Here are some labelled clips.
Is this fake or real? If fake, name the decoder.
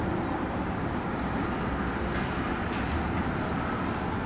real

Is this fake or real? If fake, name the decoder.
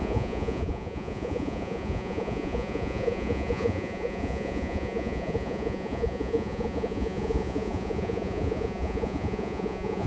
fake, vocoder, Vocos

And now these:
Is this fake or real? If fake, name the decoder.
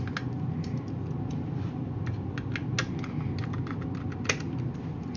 real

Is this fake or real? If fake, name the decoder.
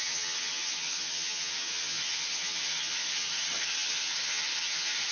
fake, vocoder, HiFi-GAN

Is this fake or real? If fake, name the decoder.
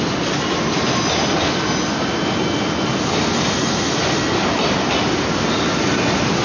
real